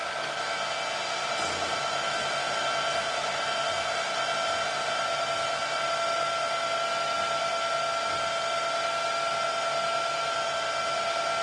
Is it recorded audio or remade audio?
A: recorded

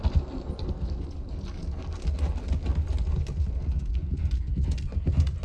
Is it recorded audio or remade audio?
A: recorded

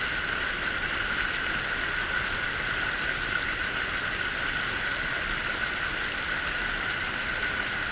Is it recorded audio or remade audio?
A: recorded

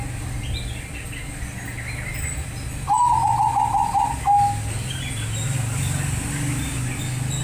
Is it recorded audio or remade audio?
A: recorded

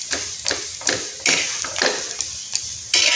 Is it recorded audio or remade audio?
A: recorded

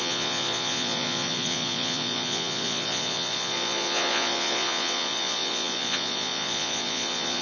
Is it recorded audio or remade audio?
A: remade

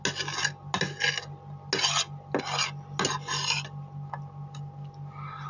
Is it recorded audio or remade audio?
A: recorded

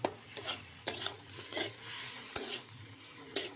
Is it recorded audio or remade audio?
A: remade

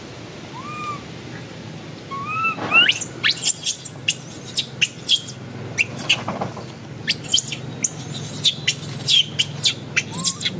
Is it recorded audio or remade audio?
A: recorded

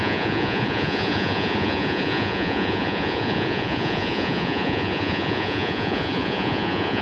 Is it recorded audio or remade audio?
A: remade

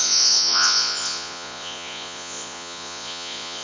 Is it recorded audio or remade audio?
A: remade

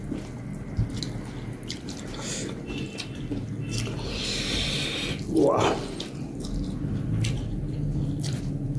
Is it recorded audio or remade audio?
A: recorded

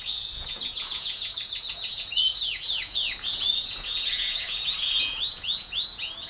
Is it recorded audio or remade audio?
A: remade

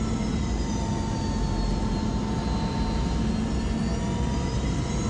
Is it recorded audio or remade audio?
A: recorded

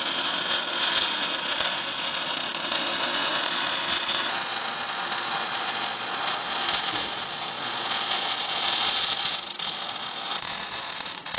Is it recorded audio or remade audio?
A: remade